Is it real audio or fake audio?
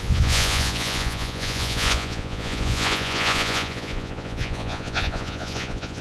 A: fake